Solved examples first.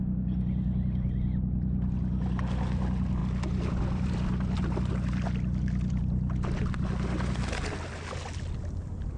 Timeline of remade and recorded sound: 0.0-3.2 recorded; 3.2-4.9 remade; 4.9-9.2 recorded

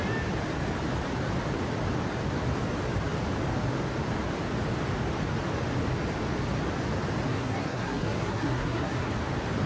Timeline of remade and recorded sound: 0.0-7.3 recorded; 7.3-9.1 remade; 9.1-9.7 recorded

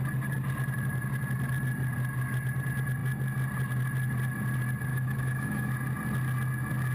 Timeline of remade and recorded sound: 0.0-4.9 recorded; 4.9-5.7 remade; 5.7-6.9 recorded

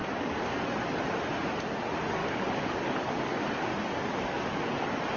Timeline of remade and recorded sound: 0.0-2.2 recorded; 2.2-3.5 remade; 3.5-3.9 recorded; 3.9-4.6 remade; 4.6-5.2 recorded

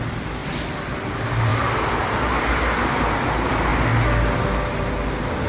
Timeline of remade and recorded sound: 0.0-5.5 recorded